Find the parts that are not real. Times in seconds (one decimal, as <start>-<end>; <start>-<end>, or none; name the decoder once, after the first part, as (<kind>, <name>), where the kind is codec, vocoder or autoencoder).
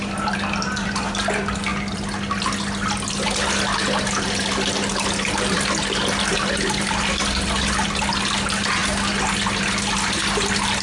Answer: none